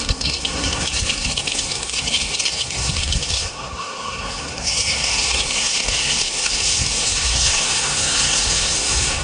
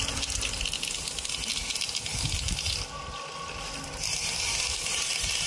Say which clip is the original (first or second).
second